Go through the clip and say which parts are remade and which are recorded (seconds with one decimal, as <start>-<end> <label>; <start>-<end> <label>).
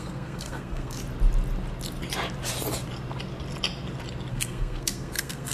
0.0-1.0 remade; 1.0-4.3 recorded; 4.3-5.5 remade